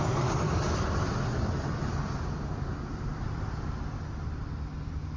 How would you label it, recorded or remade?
recorded